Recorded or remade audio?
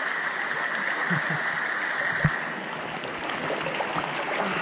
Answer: recorded